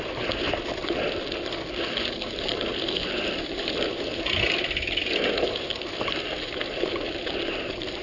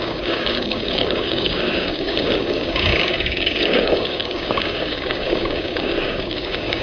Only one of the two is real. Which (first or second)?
first